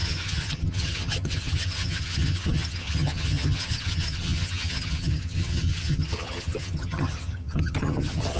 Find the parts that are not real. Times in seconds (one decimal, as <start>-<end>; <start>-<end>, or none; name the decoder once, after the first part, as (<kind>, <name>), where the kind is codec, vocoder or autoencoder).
0.0-8.4 (vocoder, HiFi-GAN)